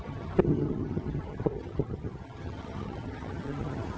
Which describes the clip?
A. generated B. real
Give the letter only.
A